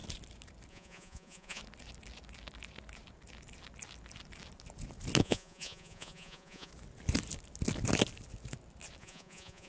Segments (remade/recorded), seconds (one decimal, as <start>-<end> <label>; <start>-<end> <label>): 0.0-0.7 recorded; 0.7-1.6 remade; 1.6-5.2 recorded; 5.2-6.7 remade; 6.7-9.0 recorded; 9.0-9.7 remade